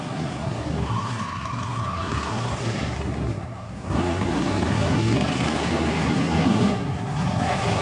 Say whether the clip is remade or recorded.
remade